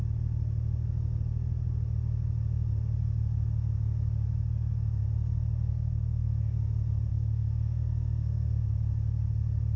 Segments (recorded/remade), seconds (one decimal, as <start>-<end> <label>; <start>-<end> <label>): 0.0-5.7 recorded; 5.7-6.4 remade; 6.4-7.1 recorded; 7.1-8.6 remade; 8.6-9.8 recorded